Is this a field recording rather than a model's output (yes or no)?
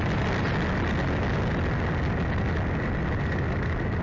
yes